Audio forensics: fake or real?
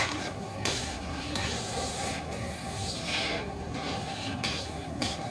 fake